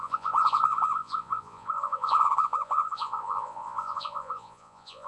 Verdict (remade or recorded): remade